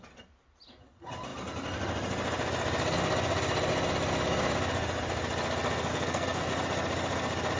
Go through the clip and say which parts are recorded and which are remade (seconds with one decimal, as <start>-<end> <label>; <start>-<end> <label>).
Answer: 0.0-5.9 recorded; 5.9-6.5 remade; 6.5-7.6 recorded